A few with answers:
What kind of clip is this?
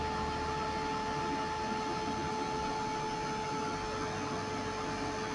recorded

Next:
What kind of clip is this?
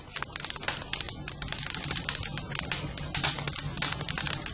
recorded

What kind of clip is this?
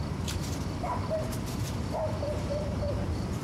remade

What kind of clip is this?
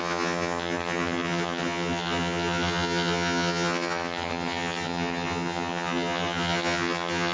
remade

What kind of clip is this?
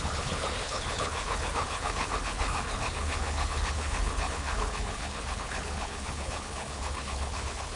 remade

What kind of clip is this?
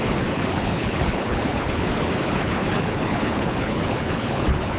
remade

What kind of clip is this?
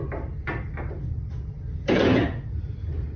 recorded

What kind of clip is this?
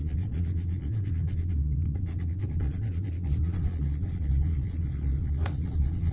remade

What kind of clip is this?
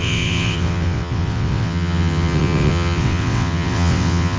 remade